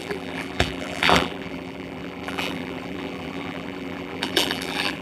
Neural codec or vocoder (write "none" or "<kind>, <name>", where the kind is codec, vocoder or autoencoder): vocoder, BigVGAN v2